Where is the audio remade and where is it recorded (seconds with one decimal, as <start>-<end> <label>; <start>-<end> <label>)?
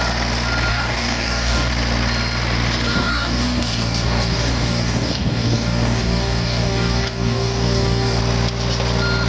0.0-0.7 recorded; 0.7-1.7 remade; 1.7-2.9 recorded; 2.9-8.2 remade; 8.2-9.3 recorded